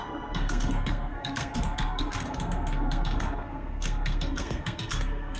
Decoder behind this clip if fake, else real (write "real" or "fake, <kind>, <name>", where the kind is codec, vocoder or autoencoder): fake, codec, SNAC